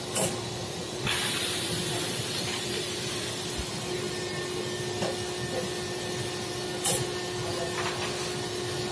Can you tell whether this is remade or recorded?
recorded